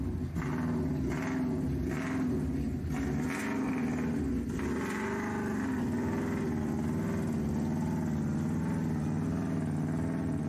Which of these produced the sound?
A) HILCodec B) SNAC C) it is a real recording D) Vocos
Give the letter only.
C